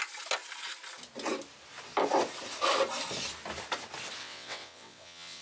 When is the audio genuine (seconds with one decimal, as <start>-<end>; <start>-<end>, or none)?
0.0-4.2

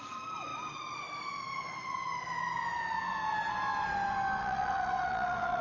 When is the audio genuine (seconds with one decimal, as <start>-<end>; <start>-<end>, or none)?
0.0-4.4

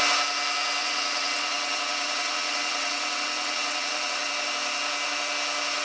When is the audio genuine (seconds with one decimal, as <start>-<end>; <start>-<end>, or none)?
0.0-0.8; 4.3-5.8